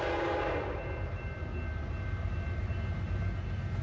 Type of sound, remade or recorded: recorded